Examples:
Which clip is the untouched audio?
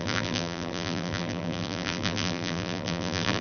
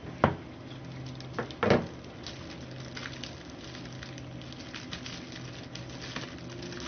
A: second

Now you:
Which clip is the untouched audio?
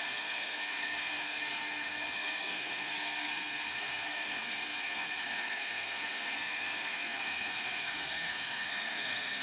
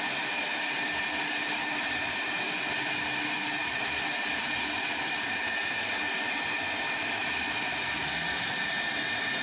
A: second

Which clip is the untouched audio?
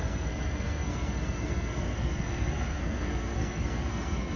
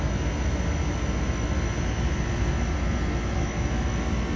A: second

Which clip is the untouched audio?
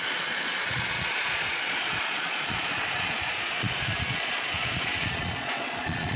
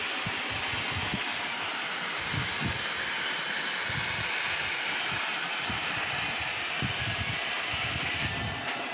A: second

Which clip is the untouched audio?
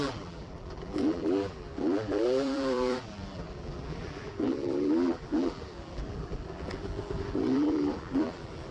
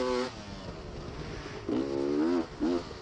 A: second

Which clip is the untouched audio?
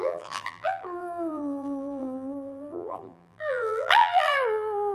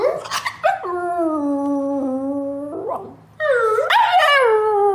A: second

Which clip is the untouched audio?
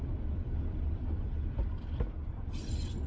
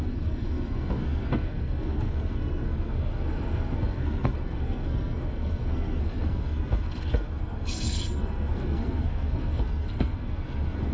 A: first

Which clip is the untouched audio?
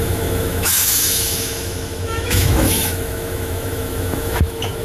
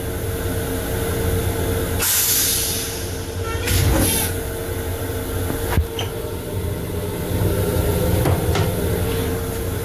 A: second